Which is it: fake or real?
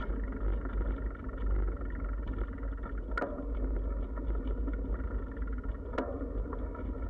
real